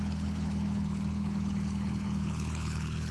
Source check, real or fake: fake